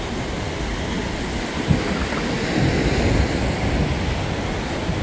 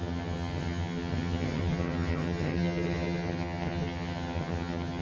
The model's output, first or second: second